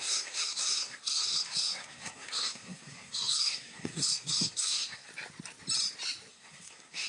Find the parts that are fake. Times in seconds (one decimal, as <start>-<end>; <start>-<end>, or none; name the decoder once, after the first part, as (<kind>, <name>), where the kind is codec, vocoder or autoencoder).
0.0-5.1 (codec, SNAC); 6.3-7.1